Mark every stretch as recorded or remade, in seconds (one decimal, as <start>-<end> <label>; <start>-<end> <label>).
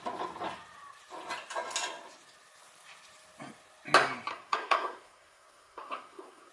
0.0-4.3 recorded; 4.3-6.5 remade